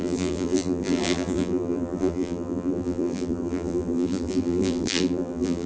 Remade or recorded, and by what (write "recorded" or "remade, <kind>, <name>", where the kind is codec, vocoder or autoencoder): remade, vocoder, BigVGAN v2